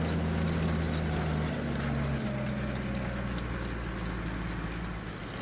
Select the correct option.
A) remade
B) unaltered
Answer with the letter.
B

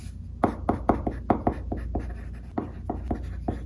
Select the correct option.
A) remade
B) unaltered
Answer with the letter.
B